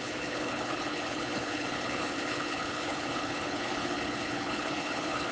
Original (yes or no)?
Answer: no